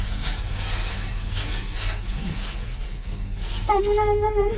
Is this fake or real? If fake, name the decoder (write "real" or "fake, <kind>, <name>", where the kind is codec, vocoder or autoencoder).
fake, codec, SNAC